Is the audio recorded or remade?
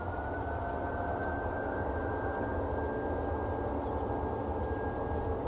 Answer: recorded